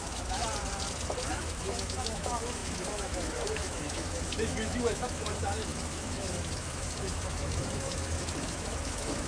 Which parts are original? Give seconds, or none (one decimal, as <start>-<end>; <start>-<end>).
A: 0.4-1.3